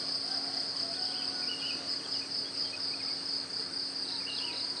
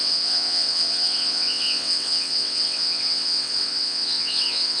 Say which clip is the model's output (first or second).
second